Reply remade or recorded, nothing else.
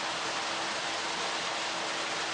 recorded